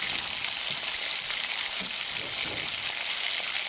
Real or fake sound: real